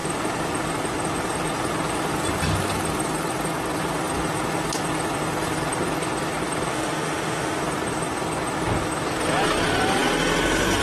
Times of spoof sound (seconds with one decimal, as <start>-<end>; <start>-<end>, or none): 6.7-7.6